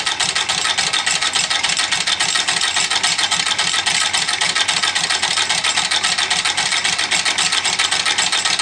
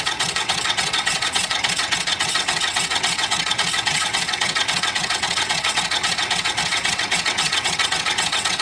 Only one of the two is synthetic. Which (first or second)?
second